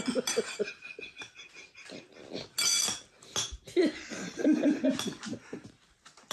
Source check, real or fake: real